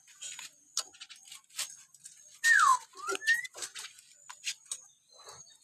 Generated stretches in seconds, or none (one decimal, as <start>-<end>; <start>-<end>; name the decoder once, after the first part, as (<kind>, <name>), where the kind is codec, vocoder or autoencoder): none

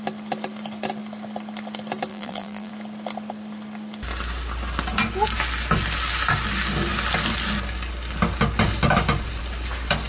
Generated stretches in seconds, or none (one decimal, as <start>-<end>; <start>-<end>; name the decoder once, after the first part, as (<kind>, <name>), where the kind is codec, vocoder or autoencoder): 2.1-2.7 (vocoder, BigVGAN v2)

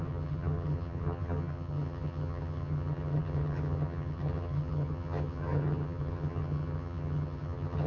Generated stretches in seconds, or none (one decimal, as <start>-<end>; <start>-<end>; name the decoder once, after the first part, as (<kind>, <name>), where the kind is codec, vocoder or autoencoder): 0.0-7.9 (vocoder, HiFi-GAN)

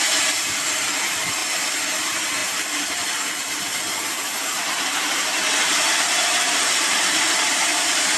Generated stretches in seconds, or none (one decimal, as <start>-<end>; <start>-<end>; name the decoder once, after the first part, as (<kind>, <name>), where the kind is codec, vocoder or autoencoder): 0.0-1.4 (vocoder, BigVGAN v2); 2.0-8.2